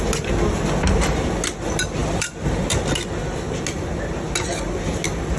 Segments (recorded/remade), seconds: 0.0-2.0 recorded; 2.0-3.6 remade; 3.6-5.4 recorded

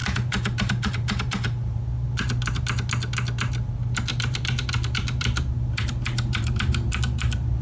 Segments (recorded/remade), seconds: 0.0-1.8 remade; 1.8-4.1 recorded; 4.1-7.6 remade

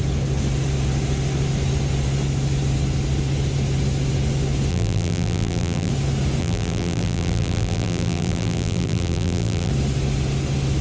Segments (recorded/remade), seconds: 0.0-4.7 recorded; 4.7-5.9 remade; 5.9-6.4 recorded; 6.4-9.7 remade; 9.7-10.8 recorded

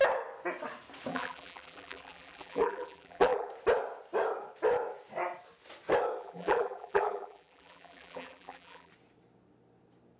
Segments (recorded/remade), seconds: 0.0-1.1 recorded; 1.1-3.5 remade; 3.5-6.2 recorded; 6.2-8.9 remade; 8.9-10.2 recorded

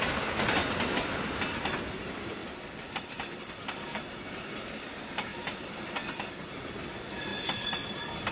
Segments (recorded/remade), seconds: 0.0-0.6 recorded; 0.6-1.1 remade; 1.1-2.4 recorded; 2.4-4.5 remade; 4.5-5.3 recorded; 5.3-6.5 remade; 6.5-7.3 recorded; 7.3-8.3 remade